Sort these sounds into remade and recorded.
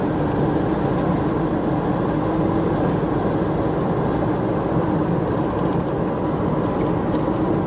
recorded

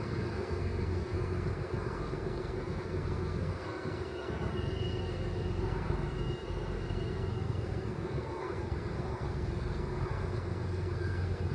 remade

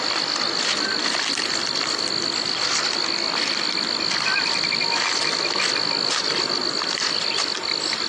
recorded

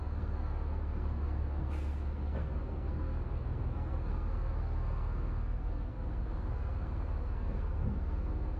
remade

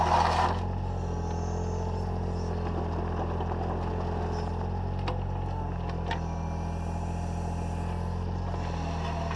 recorded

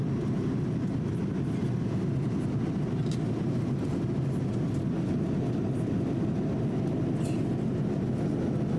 recorded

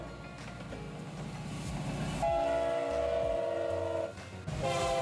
recorded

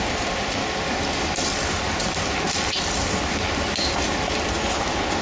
recorded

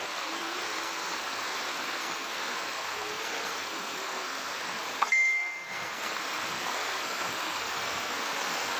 remade